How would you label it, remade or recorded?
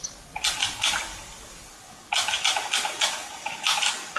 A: recorded